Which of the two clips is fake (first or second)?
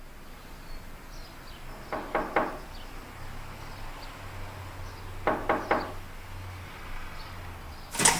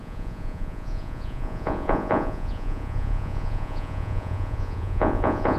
second